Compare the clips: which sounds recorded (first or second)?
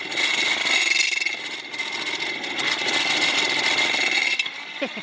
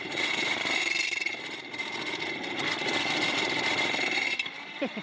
first